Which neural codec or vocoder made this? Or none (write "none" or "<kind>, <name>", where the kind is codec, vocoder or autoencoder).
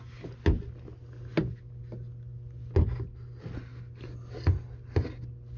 none